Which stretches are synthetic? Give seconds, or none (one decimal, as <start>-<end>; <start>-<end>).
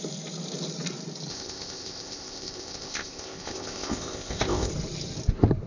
1.3-4.7